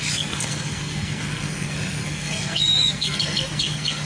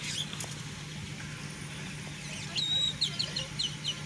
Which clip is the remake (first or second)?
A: first